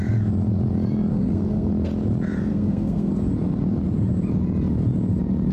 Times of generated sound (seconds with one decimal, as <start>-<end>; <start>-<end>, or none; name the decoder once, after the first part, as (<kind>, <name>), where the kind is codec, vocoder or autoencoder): 1.1-1.7 (codec, SNAC); 2.5-3.1